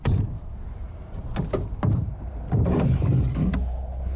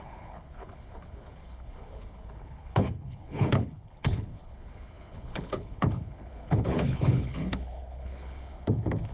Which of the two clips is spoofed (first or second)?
second